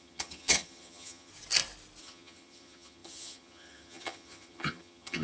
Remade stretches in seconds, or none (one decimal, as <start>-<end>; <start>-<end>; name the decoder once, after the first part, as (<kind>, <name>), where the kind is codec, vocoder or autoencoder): 0.0-1.3 (vocoder, HiFi-GAN); 2.0-5.2